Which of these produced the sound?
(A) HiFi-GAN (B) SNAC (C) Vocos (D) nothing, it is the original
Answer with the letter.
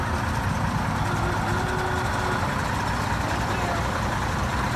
D